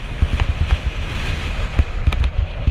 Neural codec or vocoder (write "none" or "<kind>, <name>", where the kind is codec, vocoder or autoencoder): none